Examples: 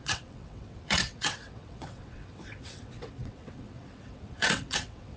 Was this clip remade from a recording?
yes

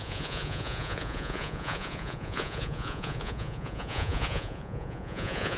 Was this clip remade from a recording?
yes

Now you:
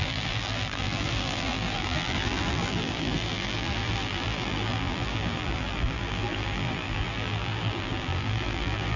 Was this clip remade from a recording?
yes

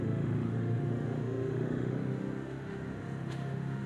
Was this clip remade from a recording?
yes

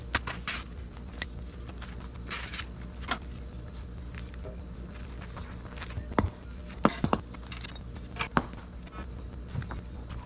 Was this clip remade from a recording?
no